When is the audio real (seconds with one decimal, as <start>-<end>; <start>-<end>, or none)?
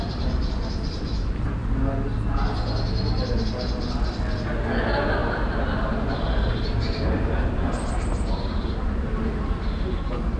0.0-5.2; 9.0-10.4